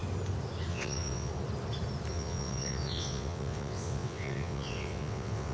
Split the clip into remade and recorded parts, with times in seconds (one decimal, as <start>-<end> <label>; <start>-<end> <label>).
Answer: 0.0-0.7 recorded; 0.7-1.3 remade; 1.3-2.1 recorded; 2.1-5.5 remade